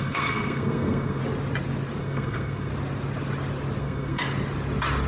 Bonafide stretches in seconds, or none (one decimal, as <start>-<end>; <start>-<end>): 1.2-2.0; 2.7-3.8; 4.2-5.1